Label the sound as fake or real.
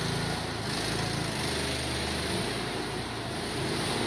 real